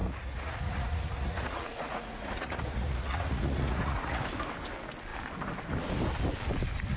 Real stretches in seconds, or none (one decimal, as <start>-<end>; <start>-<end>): 4.2-7.0